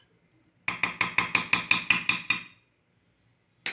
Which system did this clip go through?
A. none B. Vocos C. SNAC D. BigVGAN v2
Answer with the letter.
A